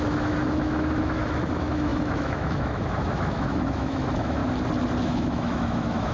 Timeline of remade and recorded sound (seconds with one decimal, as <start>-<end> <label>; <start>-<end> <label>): 0.0-4.4 remade; 4.4-5.0 recorded; 5.0-6.1 remade